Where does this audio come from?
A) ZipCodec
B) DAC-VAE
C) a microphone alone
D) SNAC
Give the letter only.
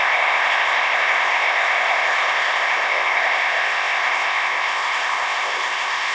A